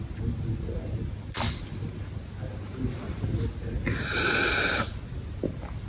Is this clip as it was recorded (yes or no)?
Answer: yes